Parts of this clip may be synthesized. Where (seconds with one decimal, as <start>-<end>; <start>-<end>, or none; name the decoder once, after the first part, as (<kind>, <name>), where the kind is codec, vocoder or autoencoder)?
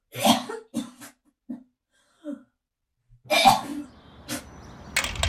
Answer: 1.2-2.0 (vocoder, BigVGAN v2)